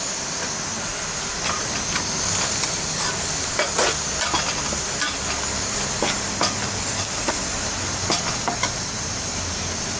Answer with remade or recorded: recorded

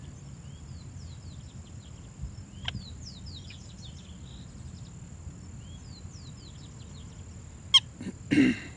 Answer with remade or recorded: recorded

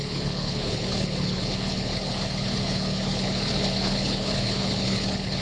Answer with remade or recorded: remade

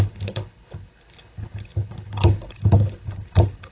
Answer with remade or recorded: remade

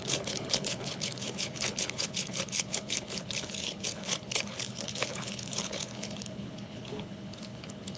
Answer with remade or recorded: remade